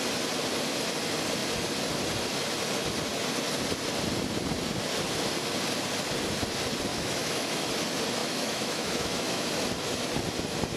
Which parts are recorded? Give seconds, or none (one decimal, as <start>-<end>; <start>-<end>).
0.0-6.9; 7.7-8.2; 9.4-10.8